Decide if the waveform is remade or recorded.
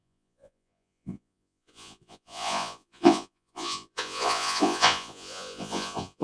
remade